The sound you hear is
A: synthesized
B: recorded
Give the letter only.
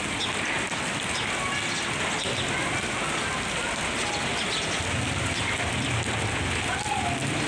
B